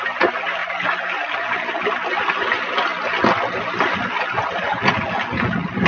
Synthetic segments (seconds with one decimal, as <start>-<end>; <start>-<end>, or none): none